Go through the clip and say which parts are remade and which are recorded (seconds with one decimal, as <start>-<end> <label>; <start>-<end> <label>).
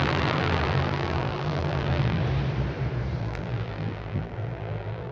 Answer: 0.0-2.2 remade; 2.2-3.2 recorded; 3.2-5.1 remade